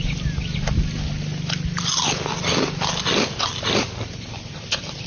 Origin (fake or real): real